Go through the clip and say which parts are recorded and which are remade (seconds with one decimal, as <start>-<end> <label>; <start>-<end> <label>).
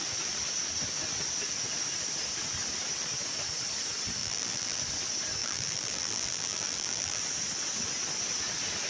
0.0-4.2 recorded; 4.2-4.8 remade; 4.8-5.4 recorded; 5.4-7.2 remade; 7.2-8.9 recorded